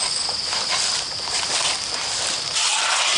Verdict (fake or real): real